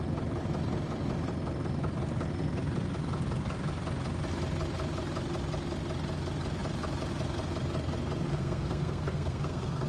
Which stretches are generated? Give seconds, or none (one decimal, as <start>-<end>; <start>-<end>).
8.3-9.9